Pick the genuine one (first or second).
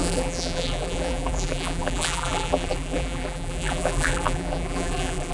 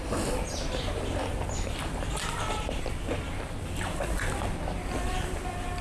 second